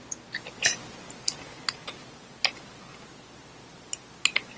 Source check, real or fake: real